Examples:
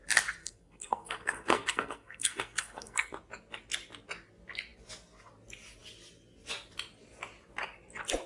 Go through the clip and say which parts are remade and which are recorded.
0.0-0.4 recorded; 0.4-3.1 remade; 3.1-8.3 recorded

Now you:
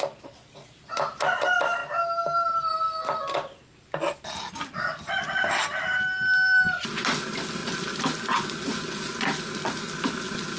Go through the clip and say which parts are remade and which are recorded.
0.0-10.6 recorded

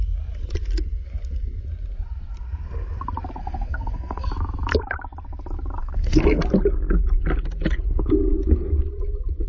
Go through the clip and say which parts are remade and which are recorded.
0.0-3.4 recorded; 3.4-4.3 remade; 4.3-5.8 recorded; 5.8-6.4 remade; 6.4-9.5 recorded

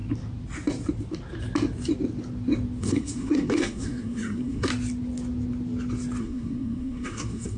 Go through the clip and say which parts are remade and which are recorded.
0.0-2.8 recorded; 2.8-4.7 remade; 4.7-6.2 recorded; 6.2-7.6 remade

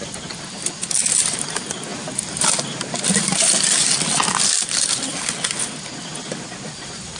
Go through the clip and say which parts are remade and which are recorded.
0.0-7.2 recorded

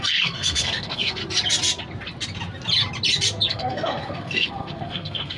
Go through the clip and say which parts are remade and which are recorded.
0.0-1.2 remade; 1.2-3.5 recorded; 3.5-5.4 remade

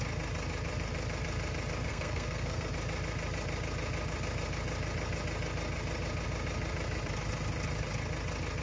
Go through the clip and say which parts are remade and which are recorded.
0.0-1.9 recorded; 1.9-2.7 remade; 2.7-8.6 recorded

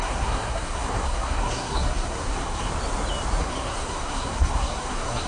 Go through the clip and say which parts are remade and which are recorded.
0.0-2.7 remade; 2.7-3.4 recorded; 3.4-5.3 remade